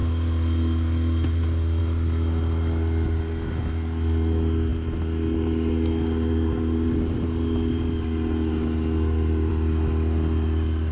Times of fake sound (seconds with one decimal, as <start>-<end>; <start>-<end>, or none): none